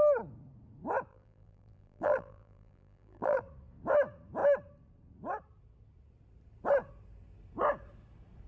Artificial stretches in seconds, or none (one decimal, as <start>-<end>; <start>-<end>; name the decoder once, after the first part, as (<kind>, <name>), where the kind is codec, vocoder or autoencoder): 1.1-3.4 (vocoder, BigVGAN v2)